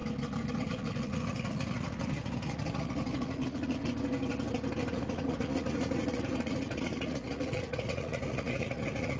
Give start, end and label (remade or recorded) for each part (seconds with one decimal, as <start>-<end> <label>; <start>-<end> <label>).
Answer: 0.0-0.5 recorded; 0.5-3.8 remade; 3.8-4.9 recorded; 4.9-9.2 remade